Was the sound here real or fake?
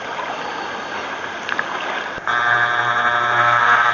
real